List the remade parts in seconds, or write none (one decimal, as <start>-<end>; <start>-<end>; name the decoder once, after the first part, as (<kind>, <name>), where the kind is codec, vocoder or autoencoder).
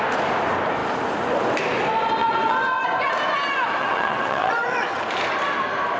2.2-2.8 (vocoder, WaveNeXt); 3.8-5.0